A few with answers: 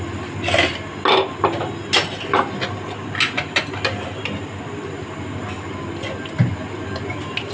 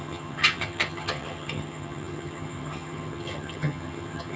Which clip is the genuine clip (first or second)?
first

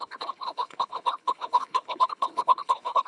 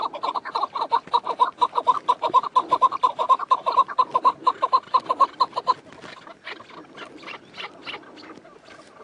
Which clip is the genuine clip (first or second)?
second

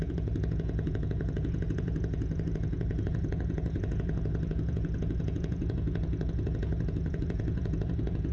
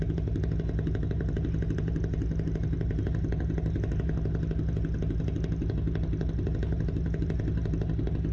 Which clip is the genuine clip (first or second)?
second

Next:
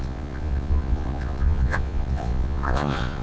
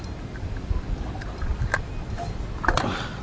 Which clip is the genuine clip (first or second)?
second